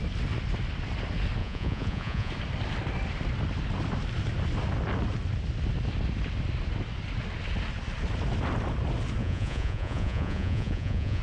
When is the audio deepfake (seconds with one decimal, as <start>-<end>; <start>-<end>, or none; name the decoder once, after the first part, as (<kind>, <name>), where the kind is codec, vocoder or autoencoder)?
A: 1.4-2.3 (vocoder, Vocos); 9.2-11.2